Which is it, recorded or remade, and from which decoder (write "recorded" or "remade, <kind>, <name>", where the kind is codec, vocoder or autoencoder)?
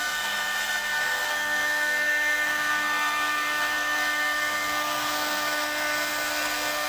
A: remade, codec, SNAC